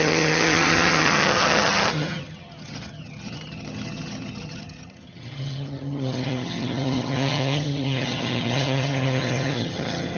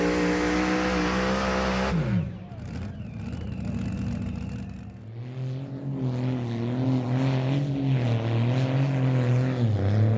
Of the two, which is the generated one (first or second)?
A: first